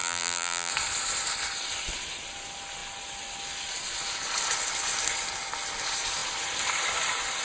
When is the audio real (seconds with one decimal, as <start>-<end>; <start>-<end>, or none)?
0.7-7.4